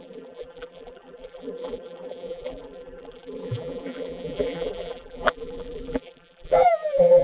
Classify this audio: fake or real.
fake